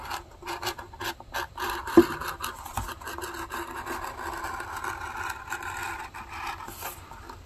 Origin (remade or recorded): recorded